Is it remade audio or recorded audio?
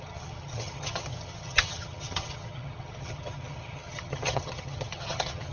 remade